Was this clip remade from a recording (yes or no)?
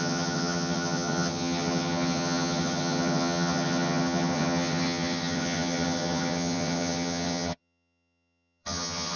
yes